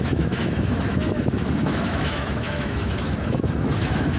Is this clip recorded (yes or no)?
no